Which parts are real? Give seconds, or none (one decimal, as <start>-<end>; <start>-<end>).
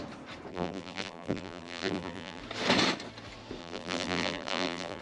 0.0-0.5; 2.4-3.6